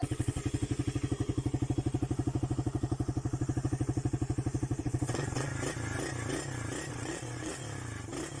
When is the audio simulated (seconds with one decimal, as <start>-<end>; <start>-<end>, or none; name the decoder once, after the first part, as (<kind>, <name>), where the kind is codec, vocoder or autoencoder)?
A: 0.0-0.4 (vocoder, WaveNeXt); 4.8-5.5; 6.9-7.6